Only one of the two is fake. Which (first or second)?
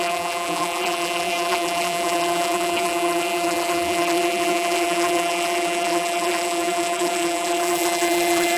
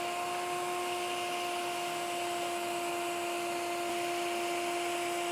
first